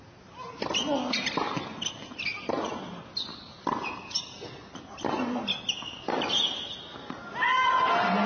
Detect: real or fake real